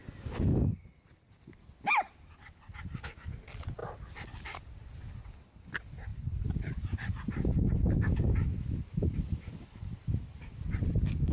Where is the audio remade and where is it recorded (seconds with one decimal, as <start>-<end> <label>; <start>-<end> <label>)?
0.0-11.3 recorded